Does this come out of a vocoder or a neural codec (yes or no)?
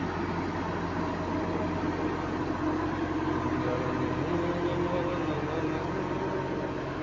no